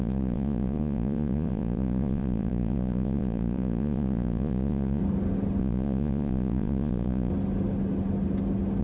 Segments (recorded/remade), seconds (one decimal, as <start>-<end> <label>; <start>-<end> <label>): 0.0-5.0 remade; 5.0-5.6 recorded; 5.6-7.3 remade; 7.3-8.8 recorded